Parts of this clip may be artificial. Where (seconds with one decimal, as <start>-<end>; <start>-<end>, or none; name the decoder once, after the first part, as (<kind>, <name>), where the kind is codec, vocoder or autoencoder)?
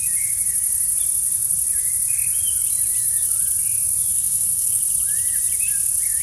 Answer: 4.1-4.8 (codec, SNAC)